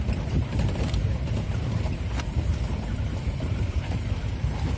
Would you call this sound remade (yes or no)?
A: yes